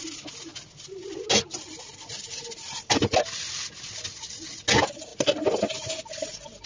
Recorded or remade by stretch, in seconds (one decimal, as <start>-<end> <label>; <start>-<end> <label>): 0.0-6.7 recorded